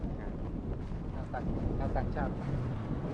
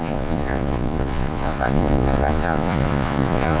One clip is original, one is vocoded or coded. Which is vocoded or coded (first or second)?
second